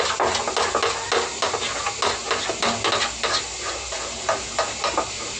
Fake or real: real